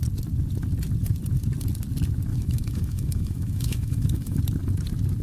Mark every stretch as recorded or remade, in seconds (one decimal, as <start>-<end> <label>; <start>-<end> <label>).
0.0-2.3 recorded; 2.3-4.4 remade; 4.4-5.2 recorded